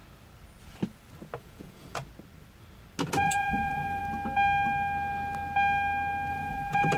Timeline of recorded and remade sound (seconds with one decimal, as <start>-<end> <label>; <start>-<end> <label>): 0.0-1.4 recorded; 1.4-2.0 remade; 2.0-3.2 recorded; 3.2-4.0 remade; 4.0-6.3 recorded; 6.3-7.0 remade